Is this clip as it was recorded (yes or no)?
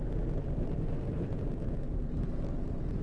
yes